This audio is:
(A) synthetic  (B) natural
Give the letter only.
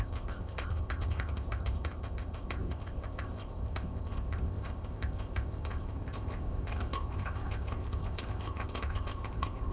A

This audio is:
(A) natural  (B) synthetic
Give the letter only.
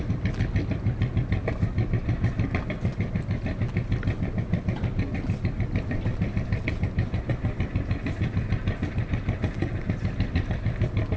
A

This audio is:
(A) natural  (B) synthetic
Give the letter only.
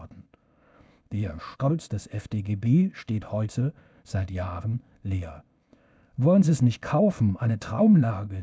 B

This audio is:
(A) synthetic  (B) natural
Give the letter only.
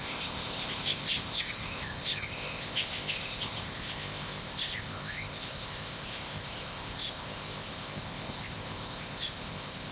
A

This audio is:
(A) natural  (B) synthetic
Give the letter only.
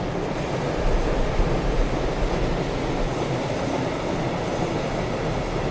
A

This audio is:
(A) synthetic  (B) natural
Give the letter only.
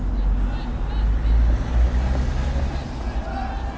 B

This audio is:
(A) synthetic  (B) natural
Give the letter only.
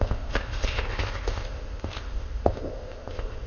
A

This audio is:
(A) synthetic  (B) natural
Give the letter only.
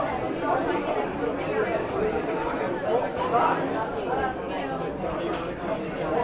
B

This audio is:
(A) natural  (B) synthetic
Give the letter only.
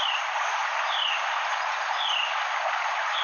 A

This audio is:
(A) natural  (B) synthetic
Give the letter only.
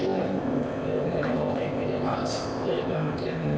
B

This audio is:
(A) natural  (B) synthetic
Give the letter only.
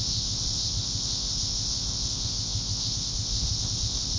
B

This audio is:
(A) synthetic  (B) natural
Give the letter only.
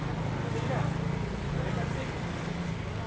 B